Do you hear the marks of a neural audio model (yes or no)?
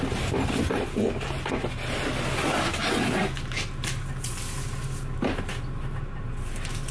no